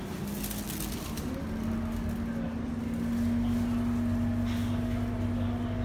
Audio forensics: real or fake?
real